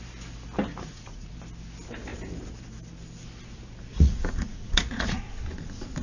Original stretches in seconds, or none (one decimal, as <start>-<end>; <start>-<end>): 0.0-0.7; 1.3-3.9; 5.2-6.0